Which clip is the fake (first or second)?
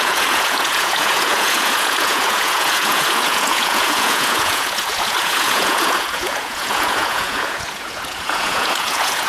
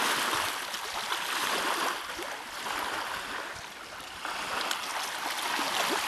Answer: first